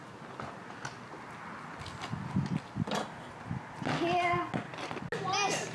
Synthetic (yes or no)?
no